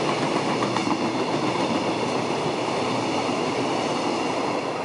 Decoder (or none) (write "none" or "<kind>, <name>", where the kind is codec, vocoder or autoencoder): none